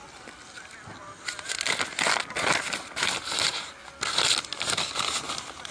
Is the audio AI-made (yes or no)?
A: no